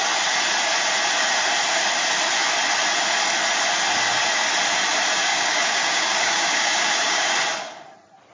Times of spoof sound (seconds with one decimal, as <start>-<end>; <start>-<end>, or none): 5.3-7.3